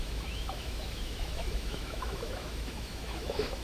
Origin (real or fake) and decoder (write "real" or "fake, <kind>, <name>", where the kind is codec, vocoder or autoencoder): fake, autoencoder, DAC-VAE